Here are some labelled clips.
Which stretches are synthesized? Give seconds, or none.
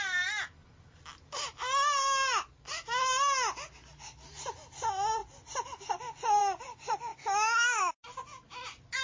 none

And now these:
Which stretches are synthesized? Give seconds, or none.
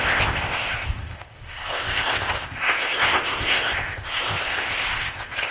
0.0-5.5 (codec, ZipCodec)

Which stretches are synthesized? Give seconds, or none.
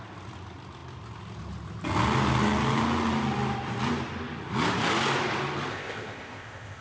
5.7-6.8 (codec, ZipCodec)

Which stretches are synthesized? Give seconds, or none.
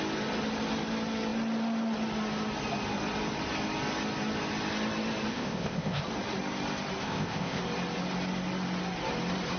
5.3-6.0 (codec, ZipCodec); 7.0-7.6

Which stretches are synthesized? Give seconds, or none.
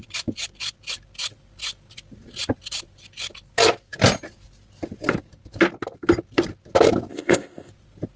7.1-7.7 (codec, ZipCodec)